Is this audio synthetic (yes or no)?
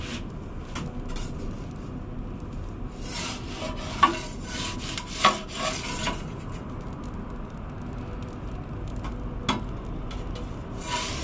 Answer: no